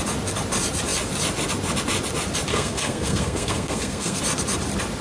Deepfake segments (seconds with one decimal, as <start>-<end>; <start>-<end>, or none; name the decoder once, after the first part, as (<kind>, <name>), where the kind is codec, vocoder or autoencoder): 2.5-4.2 (codec, SNAC)